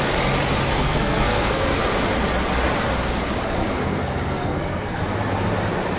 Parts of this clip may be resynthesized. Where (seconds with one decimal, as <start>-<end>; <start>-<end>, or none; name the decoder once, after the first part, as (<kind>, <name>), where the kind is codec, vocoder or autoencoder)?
0.7-1.8 (codec, SNAC); 3.6-5.0